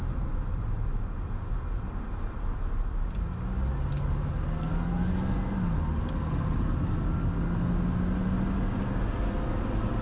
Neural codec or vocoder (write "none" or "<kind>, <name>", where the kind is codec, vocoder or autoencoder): none